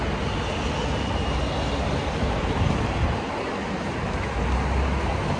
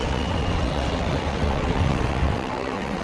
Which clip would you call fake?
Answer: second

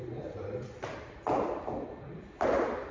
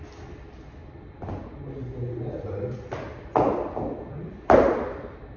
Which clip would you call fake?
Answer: first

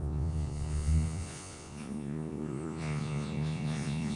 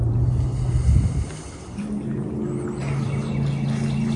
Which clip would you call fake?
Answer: first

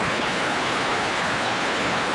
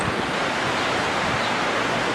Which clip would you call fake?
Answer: first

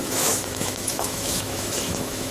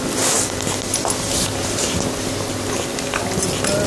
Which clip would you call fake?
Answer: first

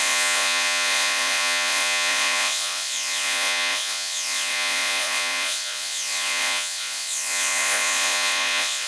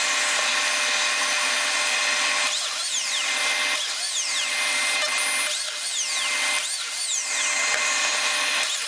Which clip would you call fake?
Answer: first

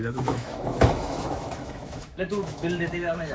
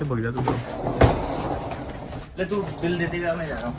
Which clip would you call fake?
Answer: first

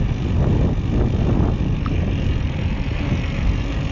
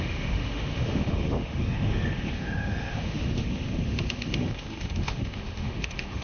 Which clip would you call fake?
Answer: second